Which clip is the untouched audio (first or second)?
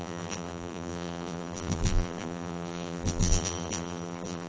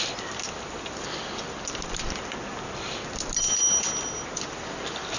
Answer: second